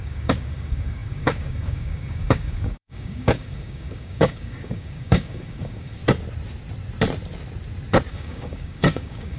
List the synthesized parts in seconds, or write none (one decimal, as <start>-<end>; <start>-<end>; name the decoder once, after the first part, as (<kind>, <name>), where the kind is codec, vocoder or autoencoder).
0.0-6.0 (codec, DAC); 8.1-9.4